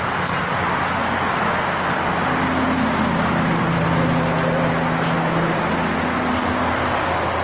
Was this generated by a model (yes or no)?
no